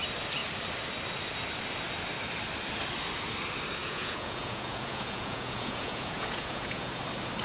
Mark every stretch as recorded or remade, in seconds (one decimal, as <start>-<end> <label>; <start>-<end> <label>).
0.0-3.8 recorded; 3.8-7.0 remade; 7.0-7.4 recorded